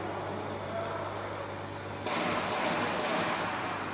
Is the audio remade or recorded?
recorded